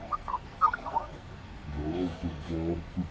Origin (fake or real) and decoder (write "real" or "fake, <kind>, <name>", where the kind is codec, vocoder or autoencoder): fake, codec, SNAC